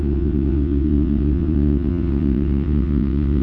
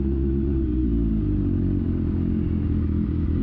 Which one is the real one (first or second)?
second